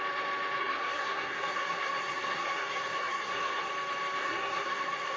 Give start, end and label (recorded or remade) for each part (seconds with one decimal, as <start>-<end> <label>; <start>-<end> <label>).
0.0-0.6 recorded; 0.6-3.7 remade; 3.7-4.2 recorded; 4.2-5.2 remade